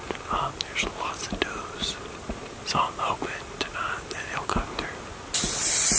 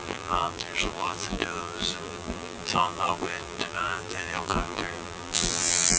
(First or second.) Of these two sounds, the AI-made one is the second